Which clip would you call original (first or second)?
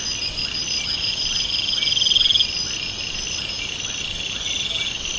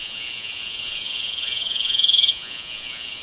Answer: first